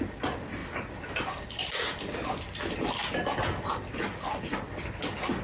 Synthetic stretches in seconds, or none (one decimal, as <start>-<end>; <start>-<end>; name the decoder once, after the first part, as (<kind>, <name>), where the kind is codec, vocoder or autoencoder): none